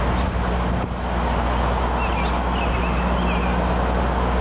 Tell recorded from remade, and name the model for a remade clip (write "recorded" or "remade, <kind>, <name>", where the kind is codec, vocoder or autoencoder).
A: recorded